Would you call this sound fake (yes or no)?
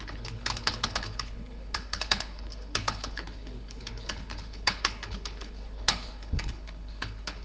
yes